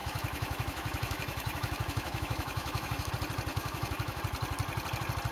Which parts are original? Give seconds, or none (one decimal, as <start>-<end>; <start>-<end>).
3.1-3.5; 4.2-5.3